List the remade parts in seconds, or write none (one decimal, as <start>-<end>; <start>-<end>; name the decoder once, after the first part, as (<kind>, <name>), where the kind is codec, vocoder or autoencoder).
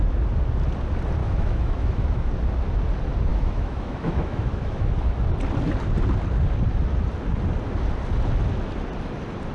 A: 1.2-2.3 (autoencoder, DAC-VAE); 3.3-5.1